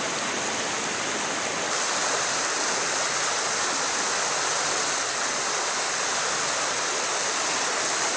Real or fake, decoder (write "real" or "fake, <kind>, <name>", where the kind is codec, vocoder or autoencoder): real